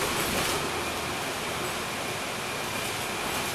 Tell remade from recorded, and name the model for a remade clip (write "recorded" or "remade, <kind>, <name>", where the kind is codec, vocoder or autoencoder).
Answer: recorded